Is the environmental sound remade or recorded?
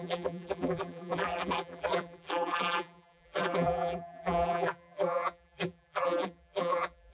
remade